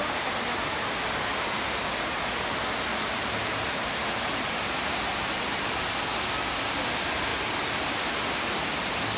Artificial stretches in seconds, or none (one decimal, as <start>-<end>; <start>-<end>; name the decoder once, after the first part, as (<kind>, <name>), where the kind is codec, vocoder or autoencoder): 2.9-5.8 (vocoder, BigVGAN v2); 7.3-8.1